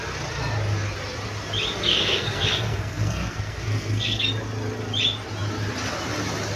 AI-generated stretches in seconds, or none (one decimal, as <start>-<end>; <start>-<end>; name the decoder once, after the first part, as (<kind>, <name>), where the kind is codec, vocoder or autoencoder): 1.9-4.2 (codec, SNAC)